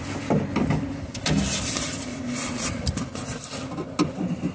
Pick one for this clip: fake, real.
real